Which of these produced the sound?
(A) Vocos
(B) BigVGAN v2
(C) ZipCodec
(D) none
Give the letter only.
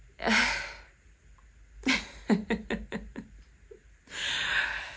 D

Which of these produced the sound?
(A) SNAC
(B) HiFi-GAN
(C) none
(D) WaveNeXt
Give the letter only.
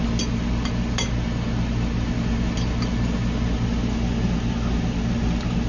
C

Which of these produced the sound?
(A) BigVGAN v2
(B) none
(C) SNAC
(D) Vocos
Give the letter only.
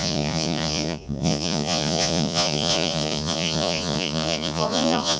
D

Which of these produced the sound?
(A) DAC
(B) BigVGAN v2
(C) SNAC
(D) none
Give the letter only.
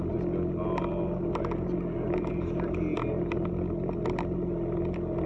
D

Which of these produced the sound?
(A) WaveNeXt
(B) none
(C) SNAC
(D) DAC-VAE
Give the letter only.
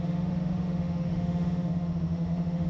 D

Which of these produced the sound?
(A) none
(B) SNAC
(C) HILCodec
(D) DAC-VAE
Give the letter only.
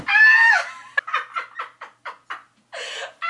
A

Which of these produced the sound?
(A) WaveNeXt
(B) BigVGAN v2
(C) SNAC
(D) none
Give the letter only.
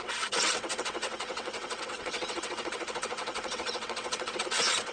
A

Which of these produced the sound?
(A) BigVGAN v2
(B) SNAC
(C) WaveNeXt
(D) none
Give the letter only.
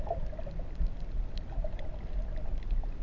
D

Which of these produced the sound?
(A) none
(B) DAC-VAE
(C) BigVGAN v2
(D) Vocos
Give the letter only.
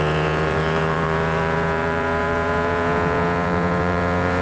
D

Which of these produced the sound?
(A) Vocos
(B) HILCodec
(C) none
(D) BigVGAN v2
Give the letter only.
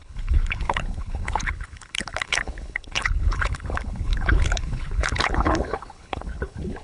B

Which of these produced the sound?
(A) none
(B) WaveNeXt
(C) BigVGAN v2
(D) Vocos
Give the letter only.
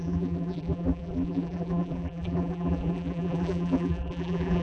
C